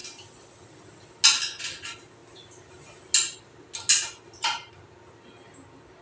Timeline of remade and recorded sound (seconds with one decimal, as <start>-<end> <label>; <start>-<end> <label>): 0.0-6.0 recorded